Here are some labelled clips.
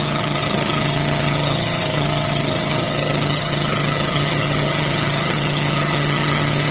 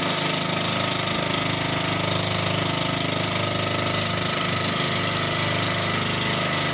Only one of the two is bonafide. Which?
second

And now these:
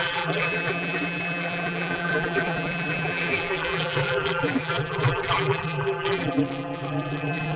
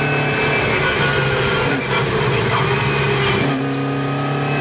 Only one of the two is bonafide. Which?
second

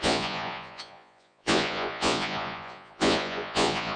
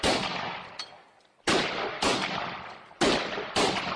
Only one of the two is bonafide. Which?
second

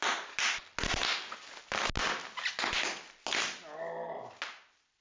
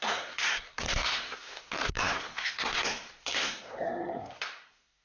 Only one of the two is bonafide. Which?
first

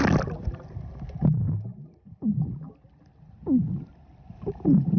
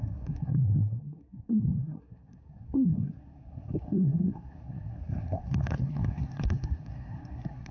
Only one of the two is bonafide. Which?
first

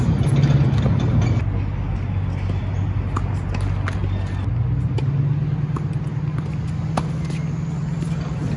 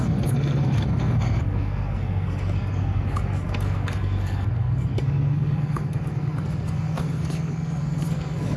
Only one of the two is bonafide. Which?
first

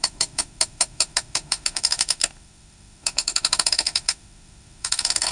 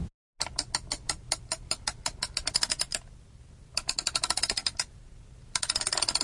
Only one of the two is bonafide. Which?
second